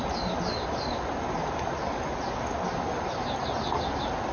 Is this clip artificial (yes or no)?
no